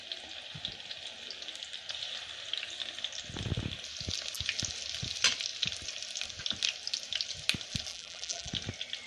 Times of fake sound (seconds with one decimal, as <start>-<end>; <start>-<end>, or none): 7.9-8.5